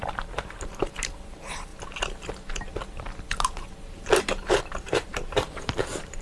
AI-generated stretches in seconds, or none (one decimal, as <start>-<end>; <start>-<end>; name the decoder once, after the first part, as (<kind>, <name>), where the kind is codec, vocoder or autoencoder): 0.0-1.7 (vocoder, BigVGAN v2); 4.2-6.2